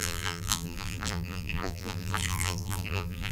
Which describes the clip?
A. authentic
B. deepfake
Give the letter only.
B